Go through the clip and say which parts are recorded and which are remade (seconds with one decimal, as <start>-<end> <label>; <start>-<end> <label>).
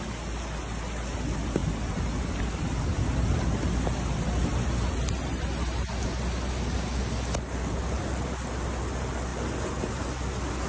0.0-10.7 recorded